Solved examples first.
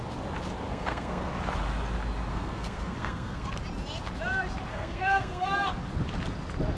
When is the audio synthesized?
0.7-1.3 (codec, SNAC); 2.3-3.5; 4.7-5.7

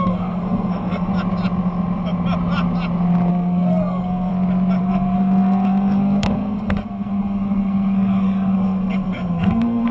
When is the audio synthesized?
0.0-1.1 (codec, SNAC); 3.3-4.3; 4.8-9.9

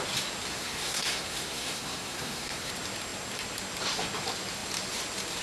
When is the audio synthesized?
0.5-2.7 (codec, SNAC)

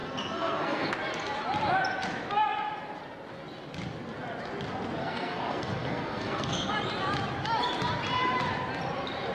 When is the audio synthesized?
0.0-0.9 (codec, SNAC); 5.0-6.7

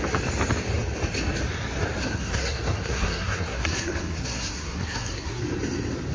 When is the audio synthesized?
2.0-5.4 (codec, SNAC)

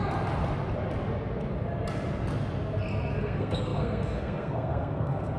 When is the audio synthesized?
3.2-5.4 (codec, SNAC)

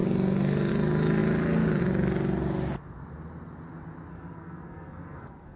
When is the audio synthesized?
4.1-5.6 (codec, SNAC)